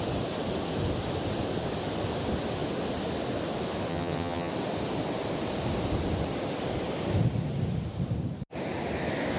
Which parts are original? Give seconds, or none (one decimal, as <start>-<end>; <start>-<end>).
0.0-3.9; 4.5-9.4